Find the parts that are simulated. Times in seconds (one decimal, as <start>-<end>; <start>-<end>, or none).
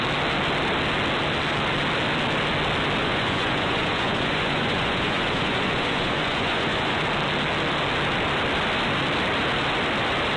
3.0-7.0